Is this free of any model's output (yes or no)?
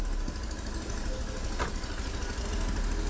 yes